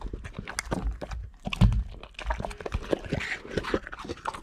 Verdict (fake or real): real